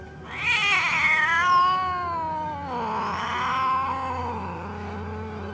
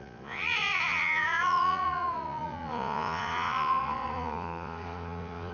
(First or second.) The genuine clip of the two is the first